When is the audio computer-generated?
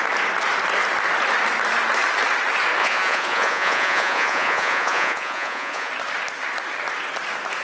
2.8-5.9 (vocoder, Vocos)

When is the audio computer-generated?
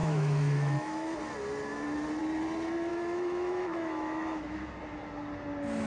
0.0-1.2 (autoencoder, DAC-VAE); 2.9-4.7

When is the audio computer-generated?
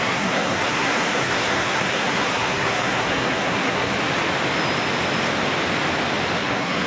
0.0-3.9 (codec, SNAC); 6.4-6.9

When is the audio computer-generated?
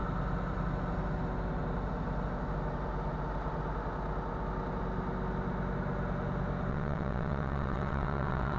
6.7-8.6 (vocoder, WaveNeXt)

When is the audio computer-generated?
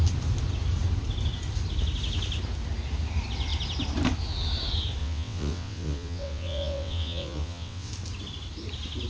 5.0-7.9 (vocoder, WaveNeXt)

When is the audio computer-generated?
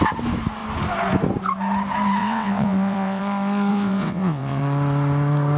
2.2-3.2 (vocoder, WaveNeXt); 3.7-4.6